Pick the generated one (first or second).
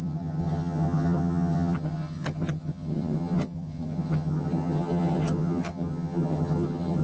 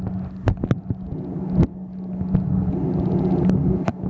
first